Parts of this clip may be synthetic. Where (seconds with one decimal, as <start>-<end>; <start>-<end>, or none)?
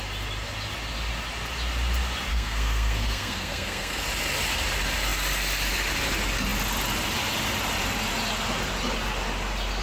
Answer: 2.3-4.0